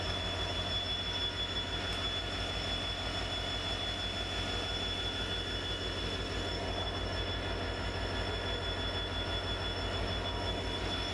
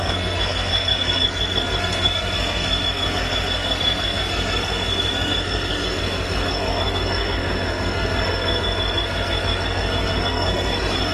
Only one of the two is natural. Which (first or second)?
first